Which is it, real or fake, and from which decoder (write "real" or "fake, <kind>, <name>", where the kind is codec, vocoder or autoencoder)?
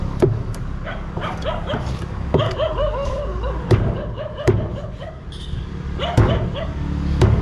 fake, codec, DAC